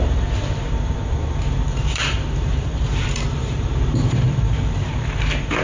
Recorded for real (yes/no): no